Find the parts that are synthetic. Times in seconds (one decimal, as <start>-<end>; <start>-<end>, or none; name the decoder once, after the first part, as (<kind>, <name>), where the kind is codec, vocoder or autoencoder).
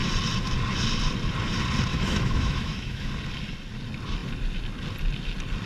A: 1.9-3.1 (autoencoder, DAC-VAE)